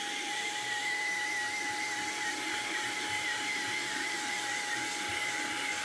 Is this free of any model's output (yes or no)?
no